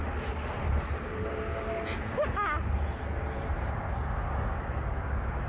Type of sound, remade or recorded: recorded